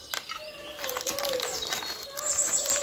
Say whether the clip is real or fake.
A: real